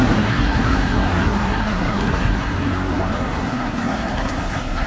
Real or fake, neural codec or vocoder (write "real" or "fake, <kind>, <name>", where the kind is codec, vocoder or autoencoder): fake, codec, SNAC